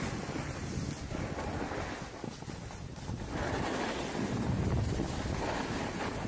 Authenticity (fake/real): real